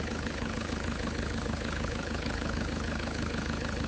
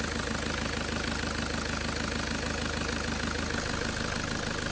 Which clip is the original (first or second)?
second